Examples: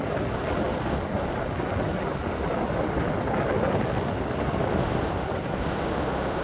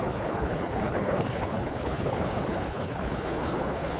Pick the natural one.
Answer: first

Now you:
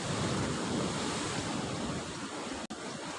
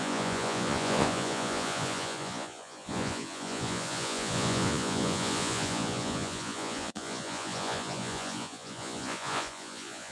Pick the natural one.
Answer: first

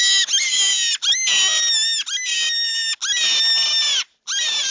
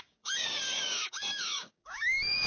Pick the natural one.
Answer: first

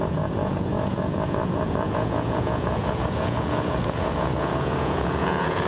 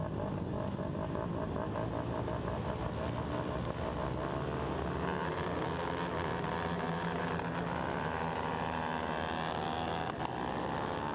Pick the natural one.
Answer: second